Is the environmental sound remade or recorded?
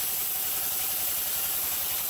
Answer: recorded